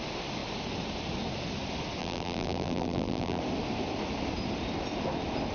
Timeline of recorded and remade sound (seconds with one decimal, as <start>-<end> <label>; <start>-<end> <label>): 0.0-2.0 recorded; 2.0-3.4 remade; 3.4-5.5 recorded